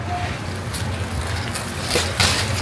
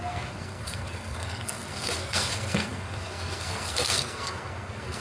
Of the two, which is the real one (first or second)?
first